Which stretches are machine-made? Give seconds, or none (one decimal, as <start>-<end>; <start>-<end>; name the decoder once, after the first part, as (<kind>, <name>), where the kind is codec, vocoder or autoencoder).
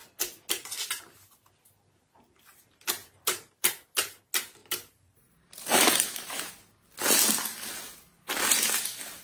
3.0-3.7 (vocoder, BigVGAN v2); 4.6-6.5